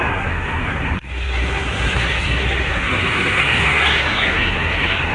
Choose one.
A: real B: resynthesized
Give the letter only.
B